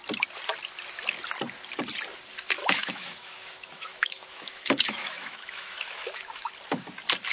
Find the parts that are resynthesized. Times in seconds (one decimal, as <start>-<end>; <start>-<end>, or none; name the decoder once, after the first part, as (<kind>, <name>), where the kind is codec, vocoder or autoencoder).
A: 2.6-6.5 (autoencoder, DAC-VAE)